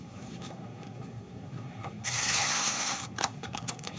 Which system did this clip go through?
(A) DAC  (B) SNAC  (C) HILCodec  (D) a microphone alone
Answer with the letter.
B